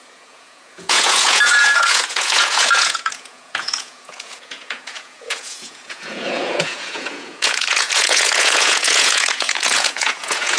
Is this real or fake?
fake